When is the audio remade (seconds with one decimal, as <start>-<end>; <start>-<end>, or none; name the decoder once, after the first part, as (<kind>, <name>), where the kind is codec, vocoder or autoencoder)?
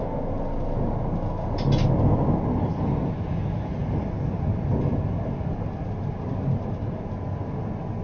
none